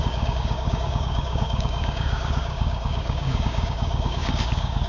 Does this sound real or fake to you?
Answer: fake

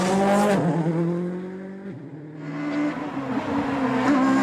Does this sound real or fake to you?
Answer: real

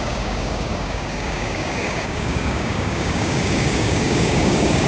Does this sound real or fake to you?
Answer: fake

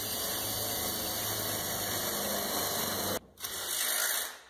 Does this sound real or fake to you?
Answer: real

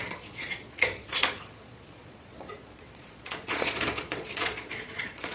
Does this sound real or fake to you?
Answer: fake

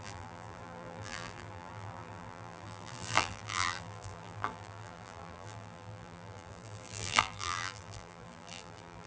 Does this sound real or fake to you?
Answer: fake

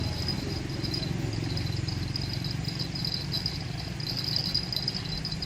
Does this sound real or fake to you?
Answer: real